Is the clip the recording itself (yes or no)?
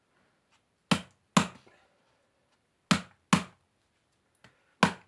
yes